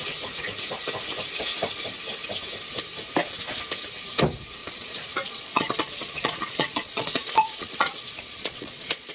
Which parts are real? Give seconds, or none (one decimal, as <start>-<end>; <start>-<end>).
0.0-4.6